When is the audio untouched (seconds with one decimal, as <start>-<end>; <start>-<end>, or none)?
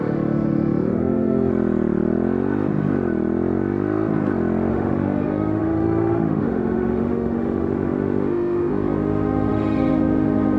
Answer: 1.5-4.7